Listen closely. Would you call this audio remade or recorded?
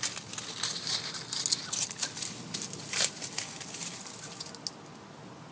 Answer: recorded